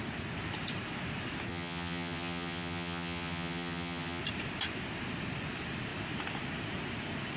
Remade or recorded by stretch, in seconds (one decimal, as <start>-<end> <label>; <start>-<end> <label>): 0.0-1.5 recorded; 1.5-4.2 remade; 4.2-7.4 recorded